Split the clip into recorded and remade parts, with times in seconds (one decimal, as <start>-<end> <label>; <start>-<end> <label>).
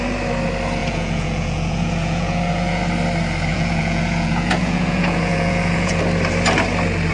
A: 0.0-0.8 recorded; 0.8-2.8 remade; 2.8-3.5 recorded; 3.5-6.0 remade; 6.0-7.1 recorded